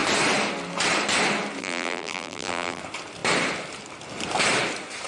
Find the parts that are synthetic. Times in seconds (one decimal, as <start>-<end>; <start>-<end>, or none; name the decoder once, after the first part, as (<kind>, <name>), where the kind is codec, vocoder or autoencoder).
1.6-2.8 (vocoder, BigVGAN v2)